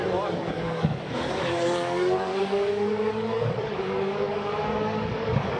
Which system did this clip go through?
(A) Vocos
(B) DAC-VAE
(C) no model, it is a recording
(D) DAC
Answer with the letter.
D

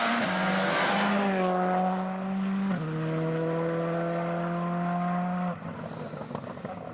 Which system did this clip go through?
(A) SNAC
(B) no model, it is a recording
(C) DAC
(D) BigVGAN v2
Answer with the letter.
B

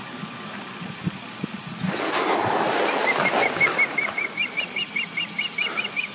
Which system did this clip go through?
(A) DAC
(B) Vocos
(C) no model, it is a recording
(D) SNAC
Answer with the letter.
C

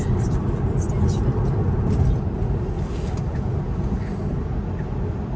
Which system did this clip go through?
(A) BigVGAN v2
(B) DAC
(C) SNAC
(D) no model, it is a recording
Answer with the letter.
D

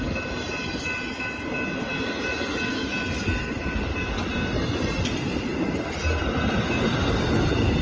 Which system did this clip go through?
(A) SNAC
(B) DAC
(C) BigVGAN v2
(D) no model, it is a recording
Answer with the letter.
D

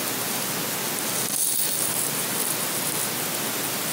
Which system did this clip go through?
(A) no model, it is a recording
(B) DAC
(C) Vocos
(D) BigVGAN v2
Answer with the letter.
A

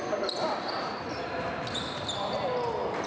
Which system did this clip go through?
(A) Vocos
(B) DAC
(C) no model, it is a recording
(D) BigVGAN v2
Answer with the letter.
C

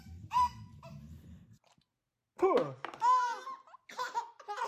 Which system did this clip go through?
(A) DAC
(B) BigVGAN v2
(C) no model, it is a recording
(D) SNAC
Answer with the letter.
C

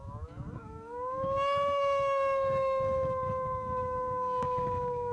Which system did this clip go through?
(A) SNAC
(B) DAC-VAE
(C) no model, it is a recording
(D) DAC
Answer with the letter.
D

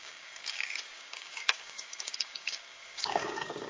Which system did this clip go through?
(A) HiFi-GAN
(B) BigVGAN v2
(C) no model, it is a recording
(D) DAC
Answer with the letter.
D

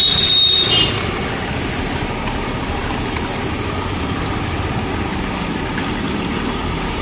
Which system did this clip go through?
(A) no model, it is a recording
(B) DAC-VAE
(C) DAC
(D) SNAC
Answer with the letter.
A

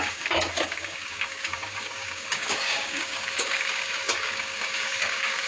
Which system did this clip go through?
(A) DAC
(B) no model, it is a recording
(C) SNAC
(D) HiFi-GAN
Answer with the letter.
A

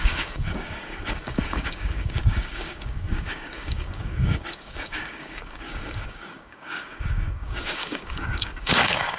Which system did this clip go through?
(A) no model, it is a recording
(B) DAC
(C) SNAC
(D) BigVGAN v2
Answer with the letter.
B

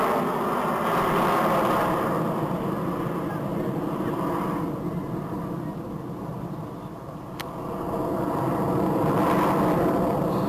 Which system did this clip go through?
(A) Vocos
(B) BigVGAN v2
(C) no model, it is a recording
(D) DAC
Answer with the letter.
C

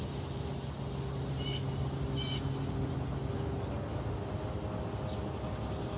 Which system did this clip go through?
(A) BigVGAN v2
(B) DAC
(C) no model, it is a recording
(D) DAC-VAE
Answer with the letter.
C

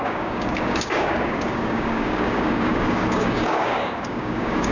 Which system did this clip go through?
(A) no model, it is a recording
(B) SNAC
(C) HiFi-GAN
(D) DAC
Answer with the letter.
D